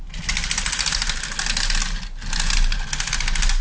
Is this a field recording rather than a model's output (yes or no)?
yes